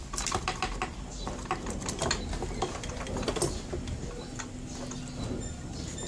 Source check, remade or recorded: recorded